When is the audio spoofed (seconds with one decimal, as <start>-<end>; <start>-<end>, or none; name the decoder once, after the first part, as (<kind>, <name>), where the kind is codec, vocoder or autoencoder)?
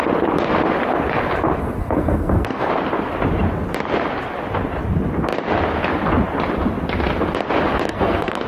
1.6-2.7 (codec, SNAC); 7.9-8.5